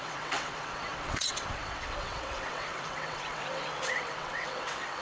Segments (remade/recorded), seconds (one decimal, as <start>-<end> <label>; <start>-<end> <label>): 0.0-5.0 remade